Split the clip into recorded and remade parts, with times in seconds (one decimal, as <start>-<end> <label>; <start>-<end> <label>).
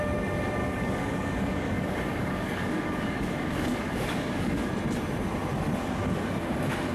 0.0-0.6 recorded; 0.6-4.7 remade; 4.7-6.9 recorded